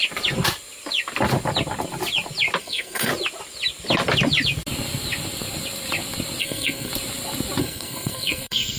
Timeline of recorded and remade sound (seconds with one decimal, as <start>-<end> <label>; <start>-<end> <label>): 0.0-2.6 recorded; 2.6-3.1 remade; 3.1-6.4 recorded; 6.4-6.9 remade; 6.9-7.6 recorded; 7.6-8.8 remade